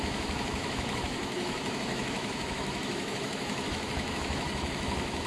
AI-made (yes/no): yes